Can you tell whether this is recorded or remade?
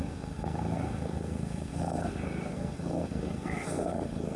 remade